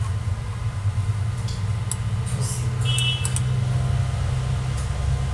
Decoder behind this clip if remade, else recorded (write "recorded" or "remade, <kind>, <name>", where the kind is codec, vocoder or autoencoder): recorded